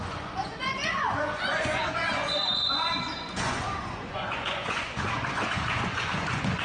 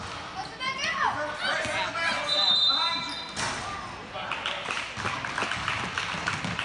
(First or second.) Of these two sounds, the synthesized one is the first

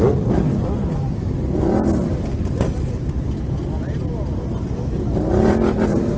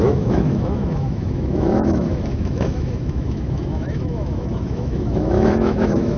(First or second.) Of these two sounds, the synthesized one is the second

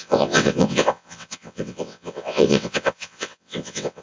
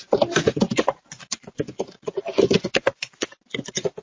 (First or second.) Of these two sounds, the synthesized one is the first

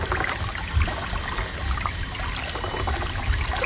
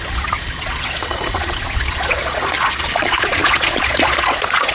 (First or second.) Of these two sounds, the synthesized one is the second